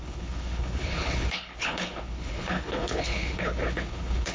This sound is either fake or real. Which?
fake